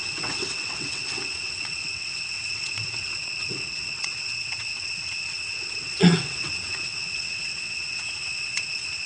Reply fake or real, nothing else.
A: fake